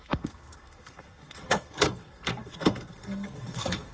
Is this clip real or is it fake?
fake